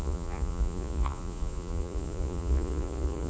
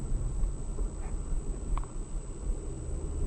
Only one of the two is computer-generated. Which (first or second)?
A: first